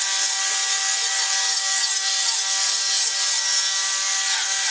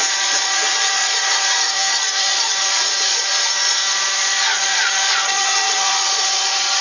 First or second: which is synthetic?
second